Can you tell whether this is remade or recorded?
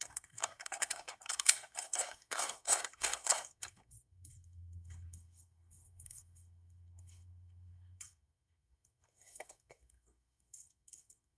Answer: remade